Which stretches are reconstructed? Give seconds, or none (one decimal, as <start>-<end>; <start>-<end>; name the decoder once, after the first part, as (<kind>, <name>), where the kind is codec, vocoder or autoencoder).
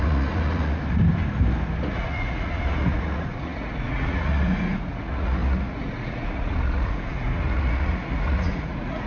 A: 0.0-1.0 (vocoder, Vocos); 1.8-9.1